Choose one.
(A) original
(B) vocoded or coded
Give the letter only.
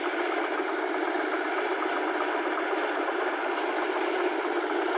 A